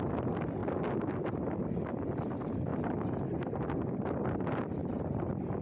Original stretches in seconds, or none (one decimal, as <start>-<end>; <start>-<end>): 0.0-0.6; 1.5-4.8